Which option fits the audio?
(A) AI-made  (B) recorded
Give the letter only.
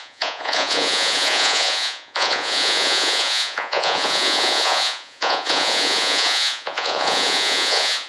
A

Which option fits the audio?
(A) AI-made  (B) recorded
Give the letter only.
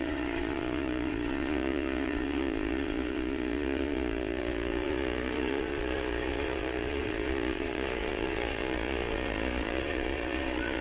A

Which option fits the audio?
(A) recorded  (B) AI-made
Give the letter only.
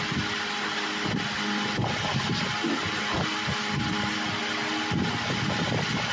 A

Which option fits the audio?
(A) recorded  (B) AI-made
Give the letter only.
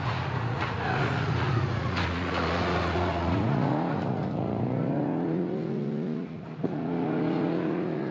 B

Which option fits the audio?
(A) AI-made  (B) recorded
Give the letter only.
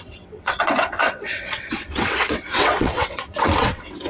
A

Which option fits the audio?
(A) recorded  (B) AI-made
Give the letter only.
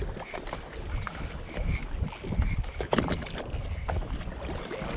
A